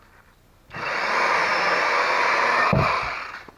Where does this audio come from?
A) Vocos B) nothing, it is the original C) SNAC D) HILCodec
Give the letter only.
B